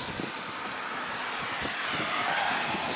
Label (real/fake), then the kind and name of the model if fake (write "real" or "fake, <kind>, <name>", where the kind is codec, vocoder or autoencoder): real